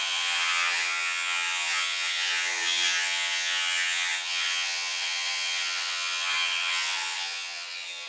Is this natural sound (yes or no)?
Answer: no